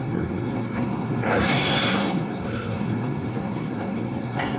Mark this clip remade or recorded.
remade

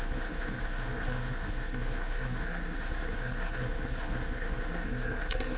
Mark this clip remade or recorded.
remade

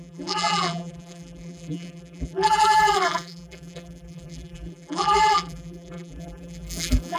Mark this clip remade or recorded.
remade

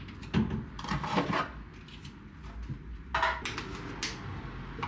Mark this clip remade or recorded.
recorded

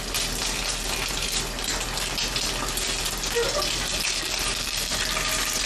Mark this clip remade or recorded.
recorded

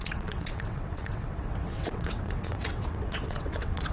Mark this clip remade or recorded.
remade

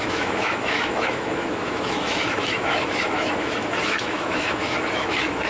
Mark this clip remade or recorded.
remade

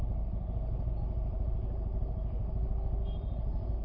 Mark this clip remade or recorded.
recorded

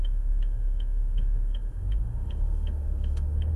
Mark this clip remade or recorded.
remade